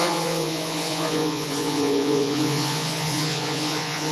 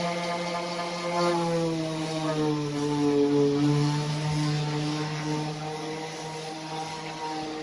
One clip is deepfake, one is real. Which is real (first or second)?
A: second